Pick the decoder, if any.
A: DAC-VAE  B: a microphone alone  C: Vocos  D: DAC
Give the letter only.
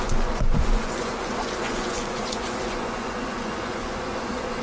C